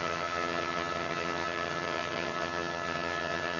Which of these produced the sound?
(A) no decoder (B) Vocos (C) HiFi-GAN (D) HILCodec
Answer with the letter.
C